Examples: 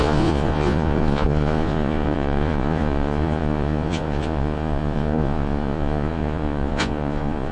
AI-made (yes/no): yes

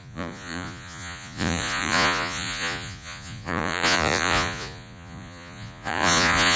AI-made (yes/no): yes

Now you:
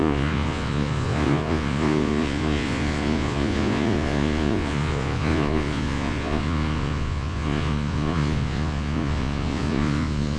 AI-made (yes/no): yes